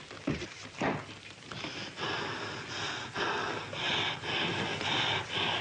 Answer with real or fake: real